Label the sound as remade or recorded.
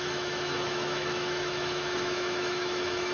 remade